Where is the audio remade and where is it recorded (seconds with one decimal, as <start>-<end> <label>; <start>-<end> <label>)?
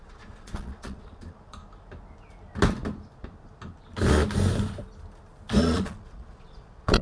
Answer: 0.0-1.6 remade; 1.6-5.6 recorded; 5.6-7.0 remade